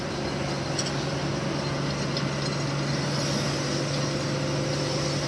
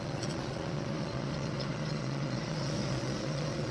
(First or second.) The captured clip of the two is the first